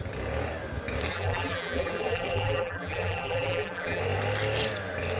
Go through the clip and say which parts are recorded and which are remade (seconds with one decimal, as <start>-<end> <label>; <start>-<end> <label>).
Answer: 0.0-1.1 recorded; 1.1-4.0 remade; 4.0-5.2 recorded